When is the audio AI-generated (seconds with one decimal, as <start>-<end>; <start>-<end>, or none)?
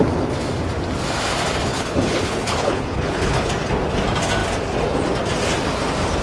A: 1.7-3.5